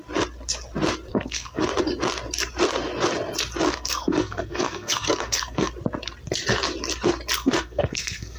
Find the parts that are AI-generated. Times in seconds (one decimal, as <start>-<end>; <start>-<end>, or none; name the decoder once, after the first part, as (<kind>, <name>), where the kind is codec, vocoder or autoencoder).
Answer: 1.1-1.6 (codec, SNAC); 3.7-5.7; 7.4-8.4